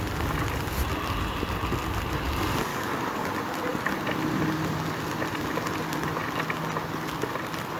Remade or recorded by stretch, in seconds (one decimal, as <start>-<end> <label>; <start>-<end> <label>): 0.0-2.7 recorded; 2.7-3.3 remade; 3.3-7.8 recorded